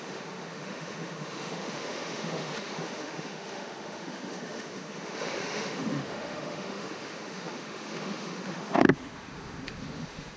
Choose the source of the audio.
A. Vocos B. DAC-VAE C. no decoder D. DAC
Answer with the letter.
B